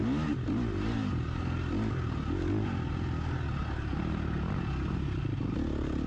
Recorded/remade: recorded